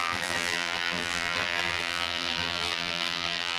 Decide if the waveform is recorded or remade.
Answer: remade